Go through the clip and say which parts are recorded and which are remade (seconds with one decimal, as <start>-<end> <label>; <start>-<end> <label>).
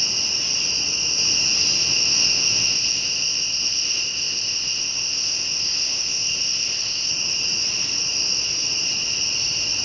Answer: 0.0-1.9 recorded; 1.9-7.1 remade; 7.1-9.8 recorded